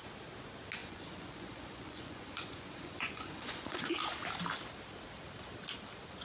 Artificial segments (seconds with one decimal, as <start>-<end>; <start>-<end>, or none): 0.8-3.9

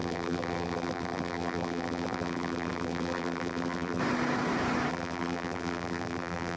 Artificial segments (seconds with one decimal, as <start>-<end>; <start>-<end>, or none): 0.0-4.0; 4.9-6.6

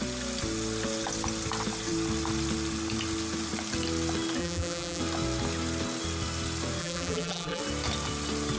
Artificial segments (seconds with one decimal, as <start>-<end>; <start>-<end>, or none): 4.4-5.0; 6.8-7.6

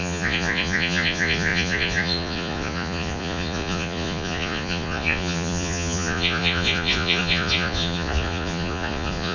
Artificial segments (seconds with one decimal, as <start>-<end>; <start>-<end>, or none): 0.0-9.3

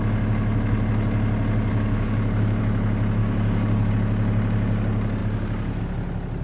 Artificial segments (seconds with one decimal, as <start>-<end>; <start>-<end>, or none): 1.7-2.6; 3.2-3.9

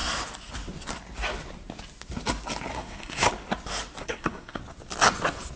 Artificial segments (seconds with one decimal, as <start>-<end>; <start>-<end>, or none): 2.7-3.3; 4.0-4.6

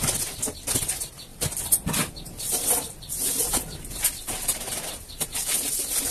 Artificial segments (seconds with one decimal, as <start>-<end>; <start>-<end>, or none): 1.3-5.0